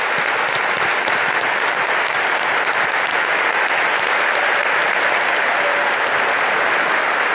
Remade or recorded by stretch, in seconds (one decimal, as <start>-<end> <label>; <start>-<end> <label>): 0.0-7.3 recorded